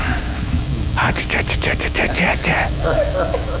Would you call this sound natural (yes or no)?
no